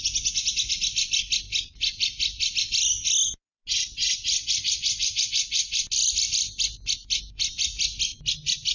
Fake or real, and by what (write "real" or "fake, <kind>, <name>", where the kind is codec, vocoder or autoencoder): real